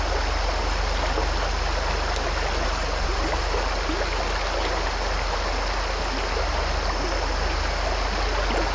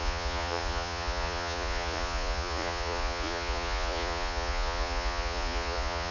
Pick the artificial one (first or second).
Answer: second